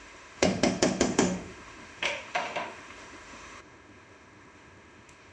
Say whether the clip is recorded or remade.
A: remade